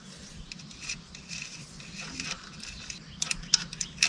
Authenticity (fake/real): fake